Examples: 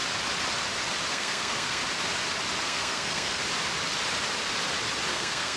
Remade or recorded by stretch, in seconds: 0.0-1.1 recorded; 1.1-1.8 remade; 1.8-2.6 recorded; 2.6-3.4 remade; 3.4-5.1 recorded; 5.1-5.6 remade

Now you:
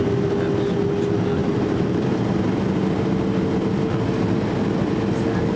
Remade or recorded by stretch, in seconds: 0.0-1.4 recorded; 1.4-2.3 remade; 2.3-5.6 recorded

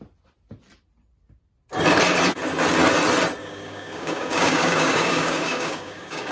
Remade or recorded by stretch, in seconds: 0.0-3.4 recorded; 3.4-6.3 remade

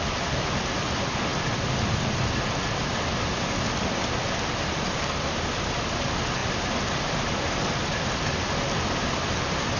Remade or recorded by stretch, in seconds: 0.0-1.3 remade; 1.3-4.1 recorded; 4.1-9.8 remade

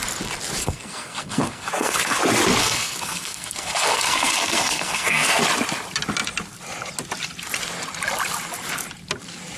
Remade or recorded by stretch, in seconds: 0.0-0.6 recorded; 0.6-2.2 remade; 2.2-2.6 recorded; 2.6-5.4 remade; 5.4-9.6 recorded

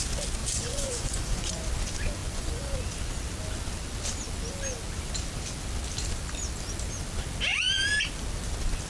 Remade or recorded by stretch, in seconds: 0.0-0.4 recorded; 0.4-1.5 remade; 1.5-2.2 recorded; 2.2-2.8 remade; 2.8-8.9 recorded